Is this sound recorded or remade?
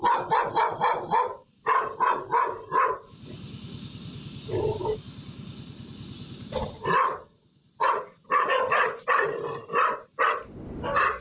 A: recorded